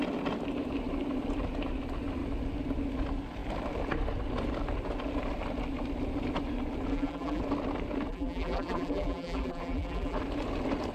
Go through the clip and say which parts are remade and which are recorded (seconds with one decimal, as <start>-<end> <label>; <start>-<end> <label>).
0.0-6.9 recorded; 6.9-7.4 remade; 7.4-8.1 recorded; 8.1-10.2 remade; 10.2-10.9 recorded